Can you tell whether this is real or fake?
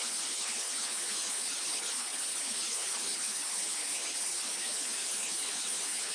fake